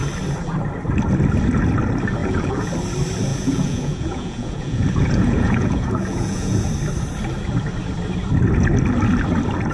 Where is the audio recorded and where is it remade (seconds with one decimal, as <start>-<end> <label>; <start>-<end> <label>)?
0.0-2.2 recorded; 2.2-2.7 remade; 2.7-3.3 recorded; 3.3-6.7 remade; 6.7-9.7 recorded